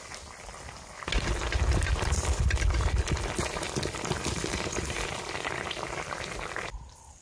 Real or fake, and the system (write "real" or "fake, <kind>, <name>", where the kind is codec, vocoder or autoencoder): real